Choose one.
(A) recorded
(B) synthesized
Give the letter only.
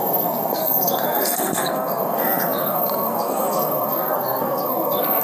B